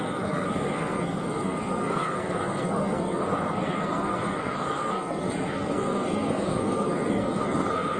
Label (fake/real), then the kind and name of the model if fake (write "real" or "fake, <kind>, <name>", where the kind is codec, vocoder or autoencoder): fake, codec, SNAC